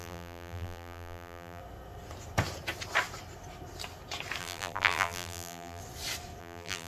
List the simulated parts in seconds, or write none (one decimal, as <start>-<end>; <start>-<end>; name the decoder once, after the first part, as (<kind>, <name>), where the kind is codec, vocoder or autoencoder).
0.0-1.6 (vocoder, BigVGAN v2); 4.4-5.8; 6.4-6.9